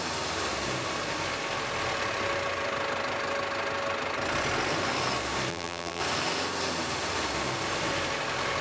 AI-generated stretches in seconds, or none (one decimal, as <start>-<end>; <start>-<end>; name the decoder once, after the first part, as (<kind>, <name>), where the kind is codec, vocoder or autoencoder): 5.5-6.0 (vocoder, BigVGAN v2)